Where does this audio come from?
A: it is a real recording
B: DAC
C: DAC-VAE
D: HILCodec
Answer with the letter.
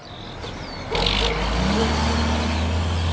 A